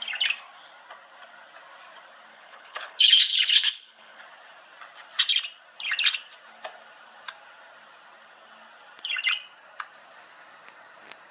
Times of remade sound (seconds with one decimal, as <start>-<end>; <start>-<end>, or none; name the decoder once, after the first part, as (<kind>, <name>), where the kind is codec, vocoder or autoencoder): 2.3-4.2 (codec, HILCodec)